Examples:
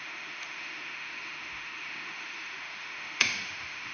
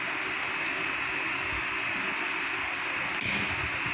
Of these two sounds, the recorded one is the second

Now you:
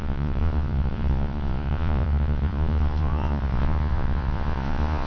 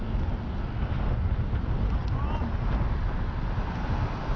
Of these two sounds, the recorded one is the second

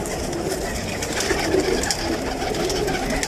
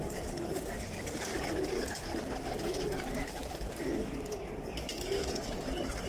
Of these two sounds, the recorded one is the first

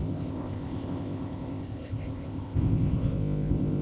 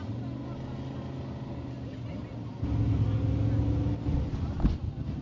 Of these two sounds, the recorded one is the second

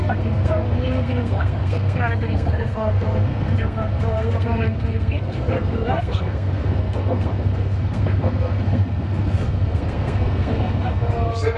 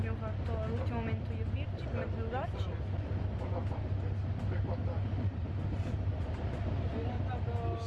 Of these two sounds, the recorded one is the second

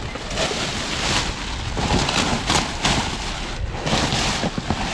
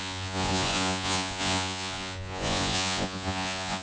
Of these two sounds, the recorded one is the first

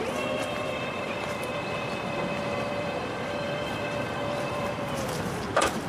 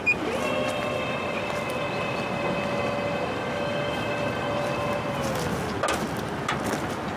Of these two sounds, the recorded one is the second